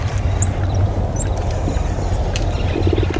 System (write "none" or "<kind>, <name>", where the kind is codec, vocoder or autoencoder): none